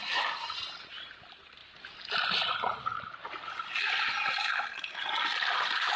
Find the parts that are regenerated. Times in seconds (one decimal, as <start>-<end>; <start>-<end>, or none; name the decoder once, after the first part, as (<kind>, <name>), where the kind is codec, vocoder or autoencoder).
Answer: none